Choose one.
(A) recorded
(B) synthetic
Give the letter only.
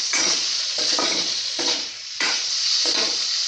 B